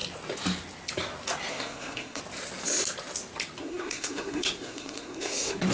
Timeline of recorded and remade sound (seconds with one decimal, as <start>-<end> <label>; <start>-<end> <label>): 0.0-1.5 recorded; 1.5-2.2 remade; 2.2-3.6 recorded; 3.6-5.7 remade